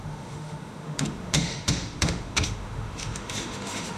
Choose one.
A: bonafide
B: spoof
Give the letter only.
B